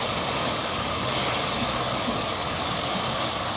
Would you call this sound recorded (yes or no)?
no